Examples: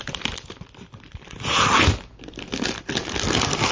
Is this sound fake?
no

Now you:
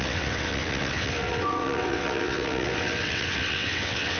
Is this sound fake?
yes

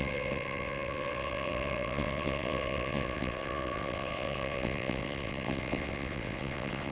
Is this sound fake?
yes